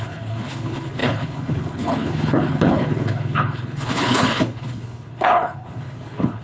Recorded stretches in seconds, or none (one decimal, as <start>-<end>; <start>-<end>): none